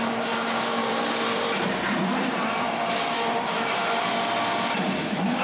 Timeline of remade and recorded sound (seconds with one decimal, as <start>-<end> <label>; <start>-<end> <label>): 0.0-0.8 recorded; 0.8-4.0 remade; 4.0-5.4 recorded